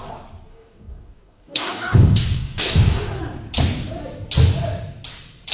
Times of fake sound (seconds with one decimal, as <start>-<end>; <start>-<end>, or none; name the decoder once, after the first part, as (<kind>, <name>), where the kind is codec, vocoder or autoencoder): 0.5-3.2 (codec, DAC)